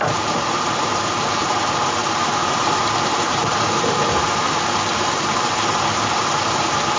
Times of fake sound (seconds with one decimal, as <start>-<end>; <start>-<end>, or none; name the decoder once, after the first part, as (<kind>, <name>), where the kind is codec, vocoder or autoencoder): 0.0-7.0 (vocoder, BigVGAN v2)

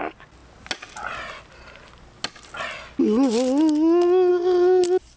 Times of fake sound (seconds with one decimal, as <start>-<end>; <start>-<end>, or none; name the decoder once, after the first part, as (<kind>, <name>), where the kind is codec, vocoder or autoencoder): none

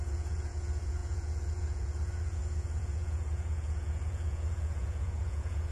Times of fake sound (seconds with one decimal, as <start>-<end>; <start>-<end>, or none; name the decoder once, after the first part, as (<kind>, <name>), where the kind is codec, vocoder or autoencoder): 0.0-5.7 (vocoder, Vocos)

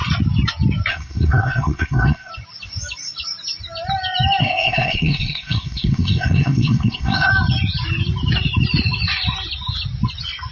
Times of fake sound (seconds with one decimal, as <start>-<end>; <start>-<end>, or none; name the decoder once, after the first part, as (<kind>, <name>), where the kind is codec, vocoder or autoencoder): 0.9-2.3 (codec, SNAC); 4.4-7.3